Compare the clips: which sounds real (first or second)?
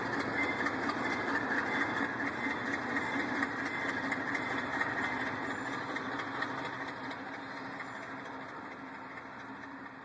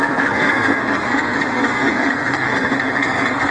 first